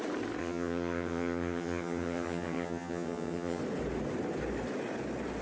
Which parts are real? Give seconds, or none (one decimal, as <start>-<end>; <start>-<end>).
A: 0.0-0.4; 3.6-5.4